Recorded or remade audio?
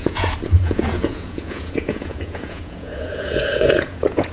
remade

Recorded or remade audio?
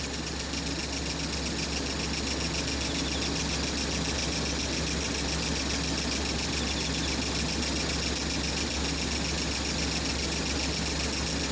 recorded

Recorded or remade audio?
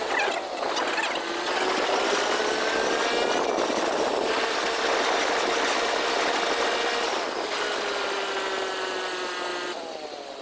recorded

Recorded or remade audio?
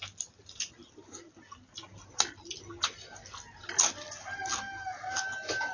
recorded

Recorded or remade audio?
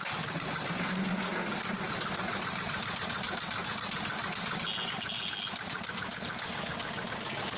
recorded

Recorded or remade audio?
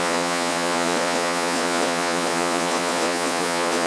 remade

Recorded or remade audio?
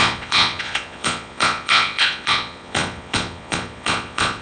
remade